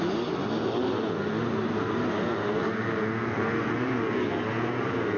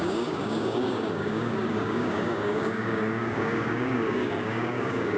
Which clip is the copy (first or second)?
second